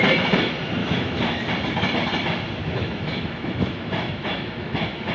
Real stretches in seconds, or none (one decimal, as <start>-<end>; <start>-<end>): 0.0-0.8; 1.4-2.6

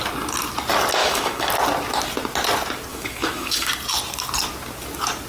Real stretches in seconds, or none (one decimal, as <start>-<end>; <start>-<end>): 0.0-1.0; 1.5-2.9; 3.7-5.3

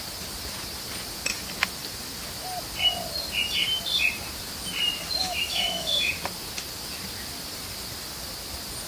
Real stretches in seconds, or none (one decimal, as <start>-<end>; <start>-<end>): 0.0-5.2; 6.1-8.9

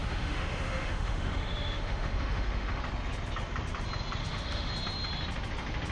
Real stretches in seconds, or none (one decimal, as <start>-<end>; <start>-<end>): 2.8-4.2; 4.7-5.9

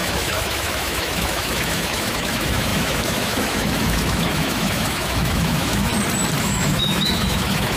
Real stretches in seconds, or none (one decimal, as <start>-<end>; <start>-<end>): 5.9-6.4

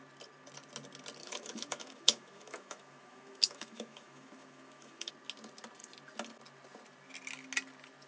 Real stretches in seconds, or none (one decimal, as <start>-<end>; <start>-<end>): 0.0-1.2; 5.1-8.1

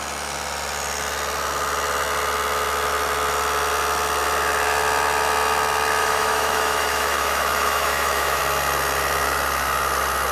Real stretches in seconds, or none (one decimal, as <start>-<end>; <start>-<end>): 0.0-6.0; 8.4-10.3